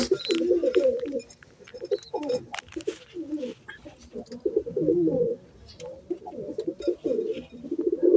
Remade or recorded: recorded